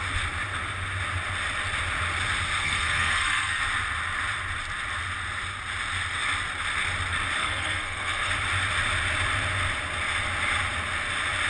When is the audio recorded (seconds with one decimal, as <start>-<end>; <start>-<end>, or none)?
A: 0.0-2.6; 3.6-7.4; 8.3-11.5